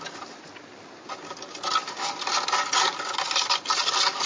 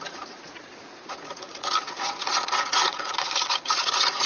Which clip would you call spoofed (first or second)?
second